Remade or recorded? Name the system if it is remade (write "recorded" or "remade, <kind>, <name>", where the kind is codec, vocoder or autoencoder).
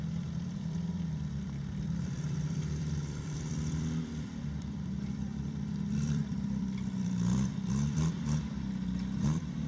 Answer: remade, vocoder, BigVGAN v2